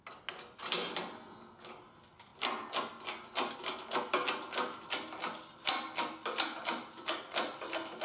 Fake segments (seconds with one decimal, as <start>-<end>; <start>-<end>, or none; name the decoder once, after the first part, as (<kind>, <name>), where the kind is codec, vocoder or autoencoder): none